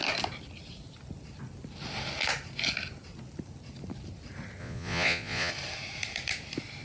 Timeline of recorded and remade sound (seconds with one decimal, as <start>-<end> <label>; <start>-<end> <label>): 0.0-4.6 recorded; 4.6-5.5 remade; 5.5-6.8 recorded